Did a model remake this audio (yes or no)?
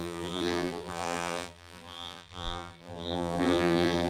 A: yes